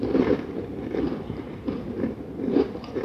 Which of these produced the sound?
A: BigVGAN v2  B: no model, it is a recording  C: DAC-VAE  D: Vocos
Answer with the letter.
A